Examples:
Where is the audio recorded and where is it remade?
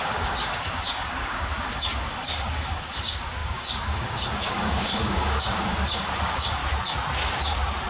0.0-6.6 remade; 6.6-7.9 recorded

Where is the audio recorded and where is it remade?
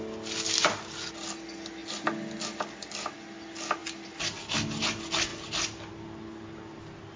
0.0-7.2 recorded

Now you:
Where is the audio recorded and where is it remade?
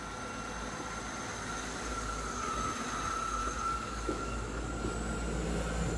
0.0-1.3 recorded; 1.3-2.5 remade; 2.5-3.4 recorded; 3.4-4.7 remade; 4.7-6.0 recorded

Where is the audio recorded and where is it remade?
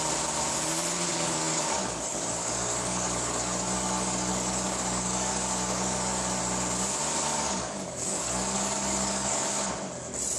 0.0-1.1 recorded; 1.1-6.4 remade; 6.4-7.3 recorded; 7.3-9.7 remade; 9.7-10.4 recorded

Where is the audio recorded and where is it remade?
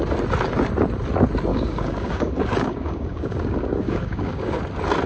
0.0-1.5 recorded; 1.5-4.6 remade; 4.6-5.1 recorded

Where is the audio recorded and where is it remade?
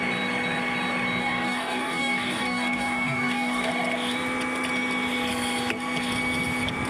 0.0-1.2 recorded; 1.2-3.7 remade; 3.7-6.9 recorded